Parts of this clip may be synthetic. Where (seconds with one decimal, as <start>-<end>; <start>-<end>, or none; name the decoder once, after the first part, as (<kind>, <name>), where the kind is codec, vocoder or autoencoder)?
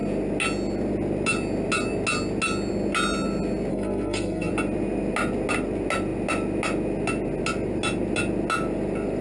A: 3.7-4.5 (codec, SNAC)